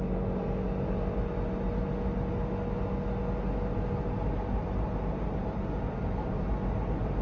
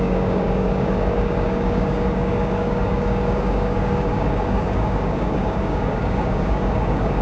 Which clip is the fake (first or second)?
second